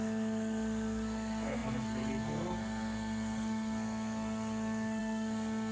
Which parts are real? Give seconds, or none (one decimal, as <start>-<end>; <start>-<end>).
none